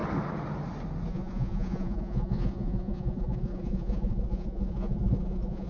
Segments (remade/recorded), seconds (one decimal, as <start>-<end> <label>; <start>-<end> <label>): 0.0-1.1 recorded; 1.1-5.7 remade